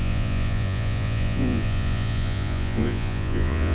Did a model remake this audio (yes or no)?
yes